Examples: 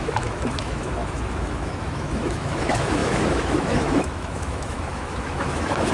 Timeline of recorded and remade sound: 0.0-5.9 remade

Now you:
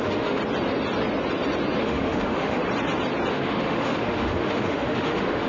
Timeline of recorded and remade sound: 0.0-0.4 remade; 0.4-1.8 recorded; 1.8-2.6 remade; 2.6-3.3 recorded; 3.3-5.5 remade

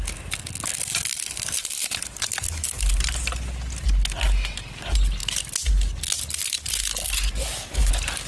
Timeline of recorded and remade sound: 0.0-7.4 recorded; 7.4-7.9 remade; 7.9-8.3 recorded

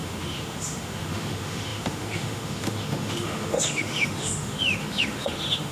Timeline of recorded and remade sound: 0.0-5.7 remade

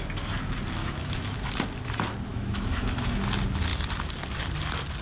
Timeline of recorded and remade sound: 0.0-0.8 recorded; 0.8-1.5 remade; 1.5-2.3 recorded; 2.3-3.2 remade; 3.2-5.0 recorded